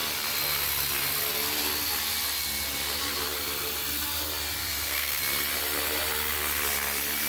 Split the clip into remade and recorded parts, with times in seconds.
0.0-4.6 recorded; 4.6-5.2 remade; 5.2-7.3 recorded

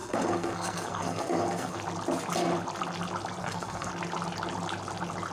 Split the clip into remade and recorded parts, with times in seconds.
0.0-1.8 remade; 1.8-3.4 recorded; 3.4-3.9 remade; 3.9-5.3 recorded